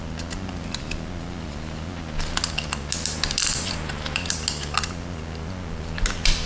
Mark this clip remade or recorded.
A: recorded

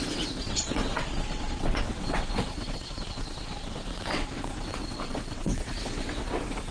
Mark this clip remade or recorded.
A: remade